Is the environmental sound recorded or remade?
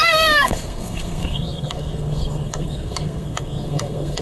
remade